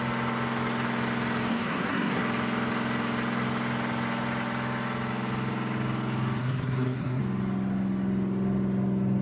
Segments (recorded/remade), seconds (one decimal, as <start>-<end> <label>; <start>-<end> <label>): 0.0-1.5 recorded; 1.5-2.2 remade; 2.2-6.4 recorded; 6.4-7.2 remade; 7.2-9.2 recorded

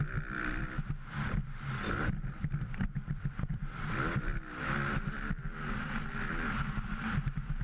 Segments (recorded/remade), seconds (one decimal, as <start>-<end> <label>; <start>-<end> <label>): 0.0-1.4 remade; 1.4-2.1 recorded; 2.1-4.3 remade; 4.3-6.2 recorded; 6.2-7.6 remade

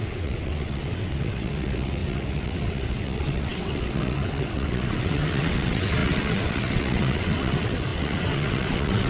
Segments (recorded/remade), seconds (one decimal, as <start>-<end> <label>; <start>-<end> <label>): 0.0-9.1 remade

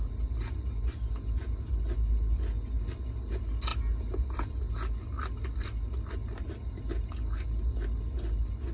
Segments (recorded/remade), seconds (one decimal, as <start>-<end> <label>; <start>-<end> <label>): 0.0-8.7 recorded

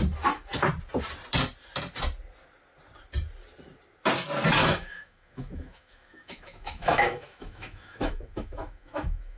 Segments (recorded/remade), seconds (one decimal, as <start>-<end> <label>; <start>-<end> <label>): 0.0-4.6 recorded; 4.6-9.4 remade

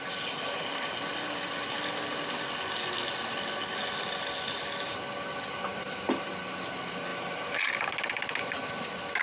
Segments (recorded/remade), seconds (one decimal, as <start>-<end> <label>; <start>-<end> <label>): 0.0-5.7 recorded; 5.7-6.3 remade; 6.3-7.1 recorded; 7.1-7.7 remade; 7.7-9.2 recorded

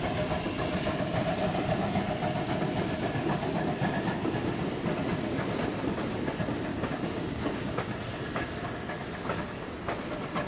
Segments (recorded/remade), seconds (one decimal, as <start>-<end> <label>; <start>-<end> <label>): 0.0-6.7 recorded; 6.7-7.9 remade; 7.9-10.5 recorded